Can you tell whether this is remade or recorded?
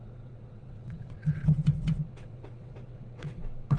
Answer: remade